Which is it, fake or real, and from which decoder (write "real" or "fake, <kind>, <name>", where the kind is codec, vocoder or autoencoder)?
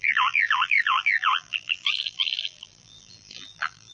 fake, vocoder, BigVGAN v2